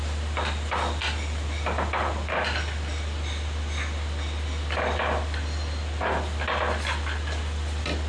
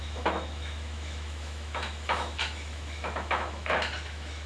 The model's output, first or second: second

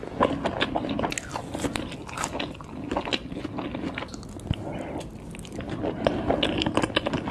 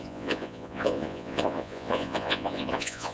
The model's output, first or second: second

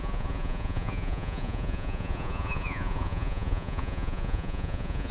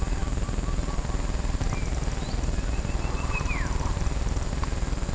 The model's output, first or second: first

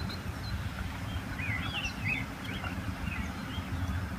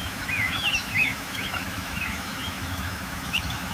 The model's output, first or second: second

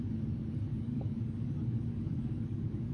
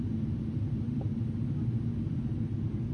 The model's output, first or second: first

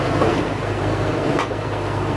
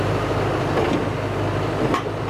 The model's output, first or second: first